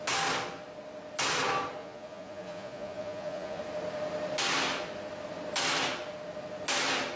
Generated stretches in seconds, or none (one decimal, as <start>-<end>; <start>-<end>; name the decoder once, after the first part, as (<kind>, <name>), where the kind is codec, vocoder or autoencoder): 1.8-3.6 (vocoder, Vocos)